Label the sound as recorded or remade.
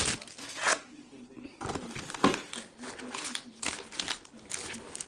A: recorded